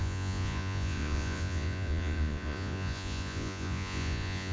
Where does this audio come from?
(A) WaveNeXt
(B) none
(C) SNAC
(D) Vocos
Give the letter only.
D